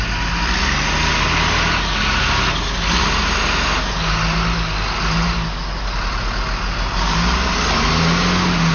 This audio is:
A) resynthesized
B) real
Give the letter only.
B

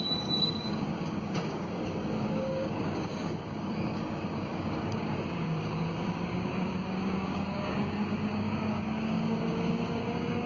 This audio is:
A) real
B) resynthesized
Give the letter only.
B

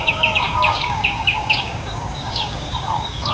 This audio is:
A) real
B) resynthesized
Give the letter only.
B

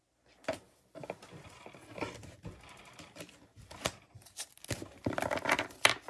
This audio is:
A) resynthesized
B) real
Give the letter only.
B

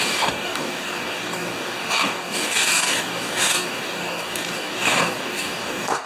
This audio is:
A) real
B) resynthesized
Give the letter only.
B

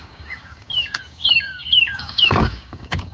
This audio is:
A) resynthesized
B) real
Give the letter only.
A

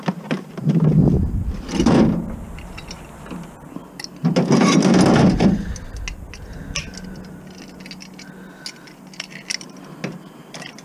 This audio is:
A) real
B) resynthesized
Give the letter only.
A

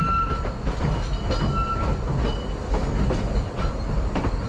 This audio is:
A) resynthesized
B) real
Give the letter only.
B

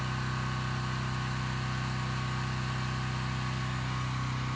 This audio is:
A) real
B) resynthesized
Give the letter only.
A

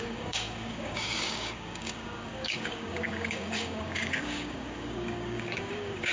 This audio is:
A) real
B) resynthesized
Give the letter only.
B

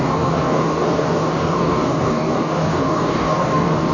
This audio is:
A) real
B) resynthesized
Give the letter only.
B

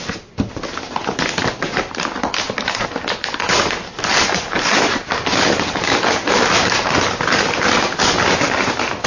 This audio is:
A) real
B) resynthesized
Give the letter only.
A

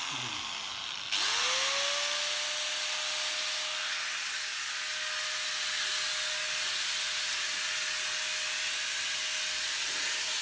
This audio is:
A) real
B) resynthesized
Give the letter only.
A